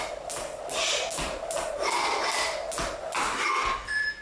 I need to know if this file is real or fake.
real